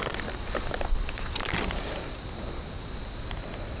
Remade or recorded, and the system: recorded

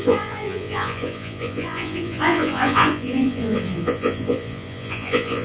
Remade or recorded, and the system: remade, vocoder, Vocos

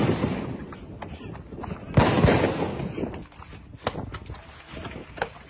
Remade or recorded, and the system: recorded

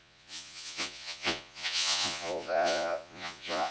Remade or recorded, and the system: remade, vocoder, Vocos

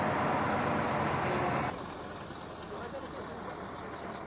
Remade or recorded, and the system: recorded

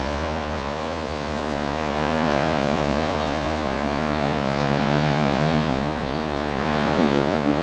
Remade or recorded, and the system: remade, vocoder, Vocos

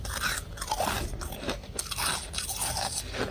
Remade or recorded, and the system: recorded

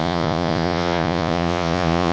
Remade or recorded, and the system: remade, vocoder, Vocos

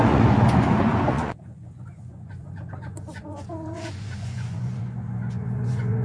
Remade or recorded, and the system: remade, vocoder, Vocos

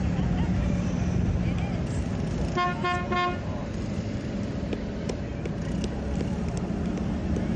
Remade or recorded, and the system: recorded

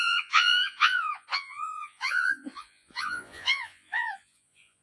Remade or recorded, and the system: remade, vocoder, Vocos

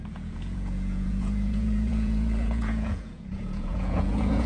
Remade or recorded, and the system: remade, vocoder, Vocos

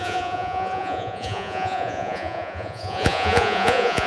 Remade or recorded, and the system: remade, vocoder, Vocos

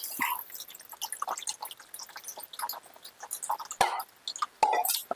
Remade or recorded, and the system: recorded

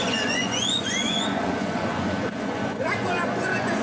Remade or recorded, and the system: remade, vocoder, Vocos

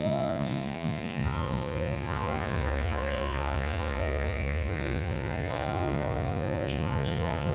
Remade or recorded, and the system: remade, vocoder, Vocos